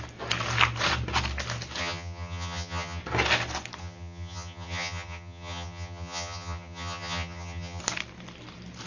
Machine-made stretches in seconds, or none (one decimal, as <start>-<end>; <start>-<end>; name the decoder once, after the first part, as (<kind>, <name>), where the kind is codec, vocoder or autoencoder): 1.8-3.0 (vocoder, HiFi-GAN); 3.8-7.8